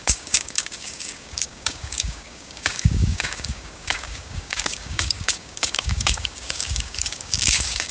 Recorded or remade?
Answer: remade